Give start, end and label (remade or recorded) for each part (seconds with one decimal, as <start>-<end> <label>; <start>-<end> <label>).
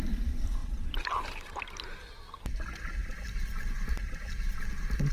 0.0-3.0 recorded; 3.0-4.5 remade; 4.5-5.1 recorded